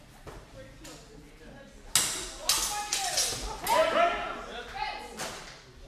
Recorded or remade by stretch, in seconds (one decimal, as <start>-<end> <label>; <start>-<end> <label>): 0.0-5.9 recorded